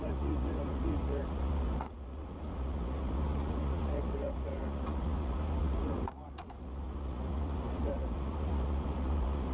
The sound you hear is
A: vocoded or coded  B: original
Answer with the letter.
A